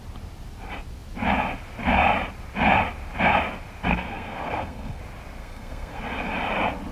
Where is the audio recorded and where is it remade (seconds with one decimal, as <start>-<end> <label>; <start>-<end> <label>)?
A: 0.0-3.9 recorded; 3.9-5.0 remade; 5.0-5.4 recorded; 5.4-6.0 remade; 6.0-6.9 recorded